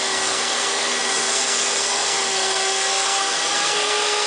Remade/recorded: remade